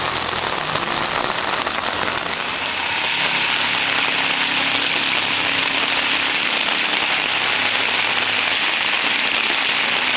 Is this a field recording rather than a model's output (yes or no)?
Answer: yes